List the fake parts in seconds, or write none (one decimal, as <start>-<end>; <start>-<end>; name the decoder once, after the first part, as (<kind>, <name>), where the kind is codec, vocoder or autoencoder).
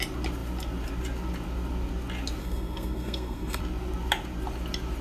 2.4-3.6 (codec, SNAC)